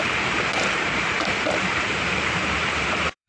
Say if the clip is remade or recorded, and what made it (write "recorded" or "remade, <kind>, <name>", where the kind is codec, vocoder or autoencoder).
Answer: remade, vocoder, BigVGAN v2